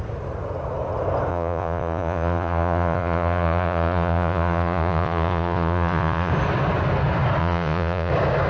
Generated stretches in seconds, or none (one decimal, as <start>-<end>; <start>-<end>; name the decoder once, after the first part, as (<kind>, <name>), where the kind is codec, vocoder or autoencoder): 1.3-6.3 (vocoder, Vocos); 7.4-8.1